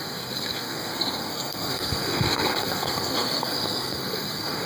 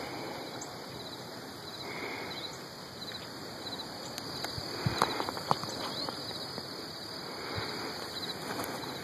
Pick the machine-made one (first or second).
first